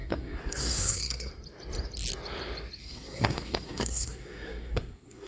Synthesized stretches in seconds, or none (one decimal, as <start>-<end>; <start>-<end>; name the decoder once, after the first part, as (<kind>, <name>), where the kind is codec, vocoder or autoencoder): 0.0-1.3 (codec, SNAC); 2.8-5.3